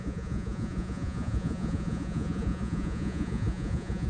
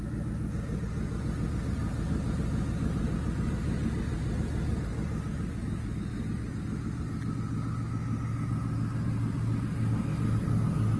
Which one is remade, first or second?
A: first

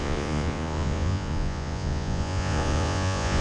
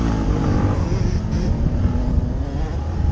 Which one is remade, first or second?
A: first